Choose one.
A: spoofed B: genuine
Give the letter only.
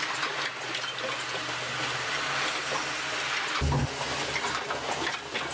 B